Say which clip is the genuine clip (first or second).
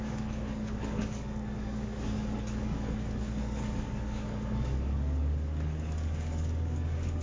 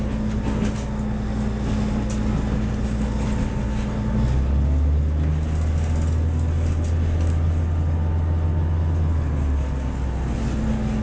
second